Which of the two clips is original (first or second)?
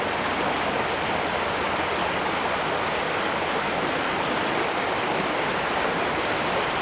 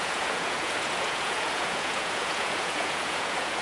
first